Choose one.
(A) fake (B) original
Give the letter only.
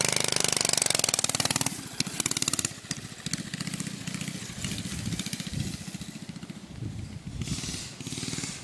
B